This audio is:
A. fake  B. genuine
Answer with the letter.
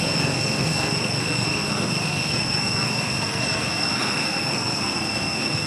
A